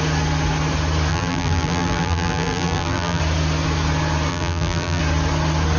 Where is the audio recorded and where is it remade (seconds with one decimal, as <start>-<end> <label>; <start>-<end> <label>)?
0.0-1.1 recorded; 1.1-3.2 remade; 3.2-4.3 recorded; 4.3-5.0 remade; 5.0-5.8 recorded